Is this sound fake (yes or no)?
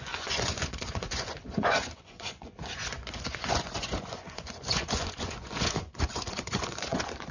yes